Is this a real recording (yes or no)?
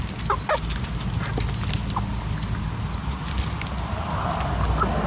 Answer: yes